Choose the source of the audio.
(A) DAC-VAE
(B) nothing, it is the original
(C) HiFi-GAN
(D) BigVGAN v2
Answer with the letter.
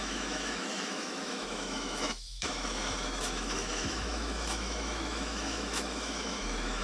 A